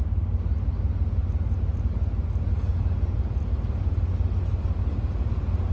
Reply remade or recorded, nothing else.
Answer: recorded